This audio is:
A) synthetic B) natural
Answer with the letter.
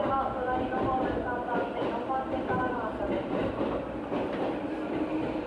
B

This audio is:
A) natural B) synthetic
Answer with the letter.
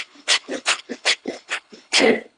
B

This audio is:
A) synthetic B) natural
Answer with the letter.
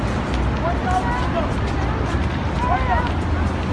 B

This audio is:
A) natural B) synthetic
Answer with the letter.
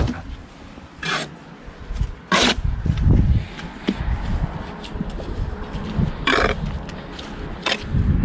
A